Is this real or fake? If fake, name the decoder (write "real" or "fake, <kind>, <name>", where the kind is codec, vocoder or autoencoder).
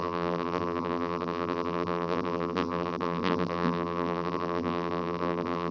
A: fake, vocoder, BigVGAN v2